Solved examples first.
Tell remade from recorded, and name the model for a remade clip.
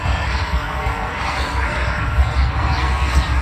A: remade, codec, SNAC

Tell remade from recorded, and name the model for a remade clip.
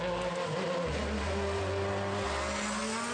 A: recorded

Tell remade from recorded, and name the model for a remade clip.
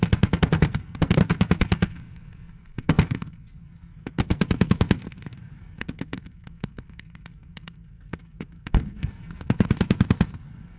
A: remade, codec, SNAC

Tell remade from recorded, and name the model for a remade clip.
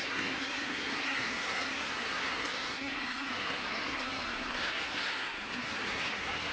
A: remade, codec, SNAC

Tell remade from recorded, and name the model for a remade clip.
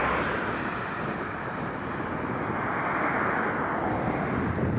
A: recorded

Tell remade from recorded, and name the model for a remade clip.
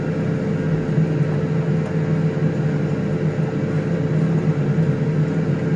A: recorded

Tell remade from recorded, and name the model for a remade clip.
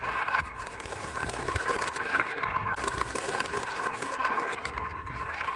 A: remade, codec, SNAC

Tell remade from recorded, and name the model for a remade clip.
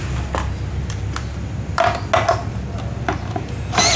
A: recorded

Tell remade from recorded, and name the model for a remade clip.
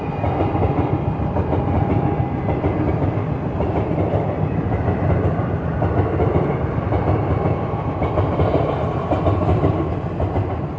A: recorded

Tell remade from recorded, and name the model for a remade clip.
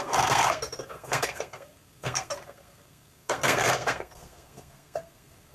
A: remade, codec, SNAC